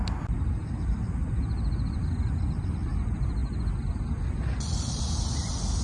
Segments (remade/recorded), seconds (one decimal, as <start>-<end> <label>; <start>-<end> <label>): 0.0-5.8 recorded

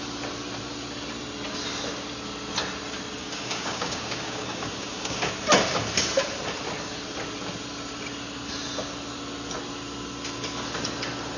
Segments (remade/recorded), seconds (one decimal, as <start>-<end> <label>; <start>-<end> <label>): 0.0-3.2 recorded; 3.2-5.3 remade; 5.3-11.4 recorded

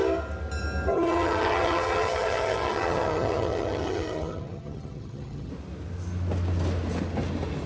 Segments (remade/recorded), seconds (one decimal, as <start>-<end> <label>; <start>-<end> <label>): 0.0-0.9 recorded; 0.9-5.5 remade; 5.5-7.7 recorded

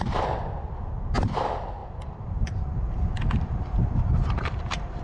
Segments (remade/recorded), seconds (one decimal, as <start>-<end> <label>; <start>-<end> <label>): 0.0-1.8 recorded; 1.8-5.0 remade

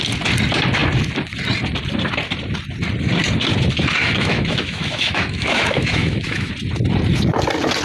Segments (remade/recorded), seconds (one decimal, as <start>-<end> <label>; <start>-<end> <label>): 0.0-4.0 recorded; 4.0-6.5 remade; 6.5-7.8 recorded

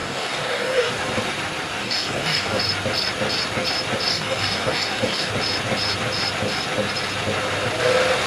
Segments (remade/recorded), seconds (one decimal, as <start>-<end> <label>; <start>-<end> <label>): 0.0-0.9 remade; 0.9-1.8 recorded; 1.8-2.6 remade; 2.6-4.1 recorded; 4.1-5.3 remade; 5.3-8.3 recorded

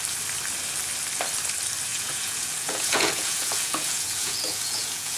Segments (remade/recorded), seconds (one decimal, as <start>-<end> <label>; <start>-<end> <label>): 0.0-1.9 recorded; 1.9-5.2 remade

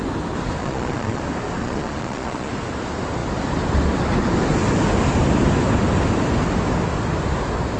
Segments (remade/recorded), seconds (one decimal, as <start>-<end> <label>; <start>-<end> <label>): 0.0-0.6 recorded; 0.6-1.2 remade; 1.2-1.6 recorded; 1.6-2.5 remade; 2.5-7.8 recorded